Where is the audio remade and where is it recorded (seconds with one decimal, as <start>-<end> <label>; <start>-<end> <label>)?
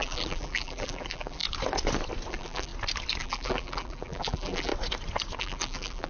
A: 0.0-1.4 remade; 1.4-2.3 recorded; 2.3-2.7 remade; 2.7-3.2 recorded; 3.2-4.7 remade; 4.7-5.4 recorded; 5.4-6.1 remade